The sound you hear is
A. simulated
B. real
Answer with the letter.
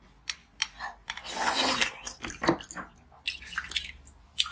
B